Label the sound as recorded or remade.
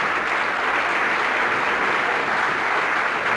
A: recorded